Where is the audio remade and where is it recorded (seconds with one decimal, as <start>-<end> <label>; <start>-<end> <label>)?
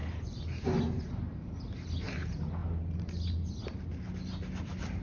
0.0-5.0 recorded